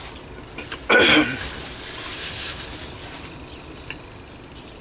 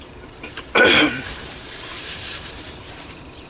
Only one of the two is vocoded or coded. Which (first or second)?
second